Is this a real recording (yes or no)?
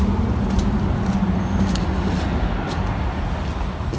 yes